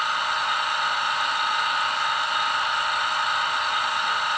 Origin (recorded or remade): remade